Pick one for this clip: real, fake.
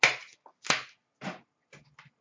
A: real